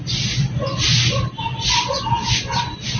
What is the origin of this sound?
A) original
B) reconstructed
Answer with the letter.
A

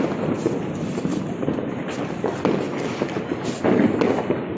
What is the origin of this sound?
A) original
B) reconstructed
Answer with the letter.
A